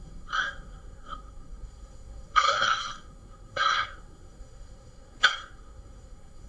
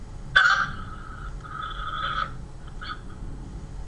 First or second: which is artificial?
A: first